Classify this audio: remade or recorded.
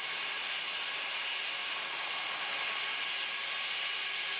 recorded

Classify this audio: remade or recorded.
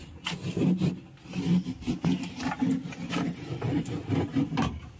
recorded